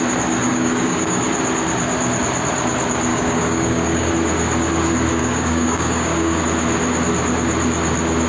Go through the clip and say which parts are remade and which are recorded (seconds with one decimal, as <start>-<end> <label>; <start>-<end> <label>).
0.0-0.5 recorded; 0.5-1.2 remade; 1.2-3.1 recorded; 3.1-4.1 remade; 4.1-5.2 recorded; 5.2-6.4 remade; 6.4-8.3 recorded

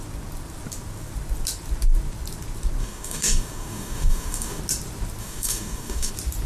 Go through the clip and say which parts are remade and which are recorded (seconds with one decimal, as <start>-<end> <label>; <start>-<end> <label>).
0.0-2.8 recorded; 2.8-4.6 remade; 4.6-5.2 recorded; 5.2-6.1 remade; 6.1-6.5 recorded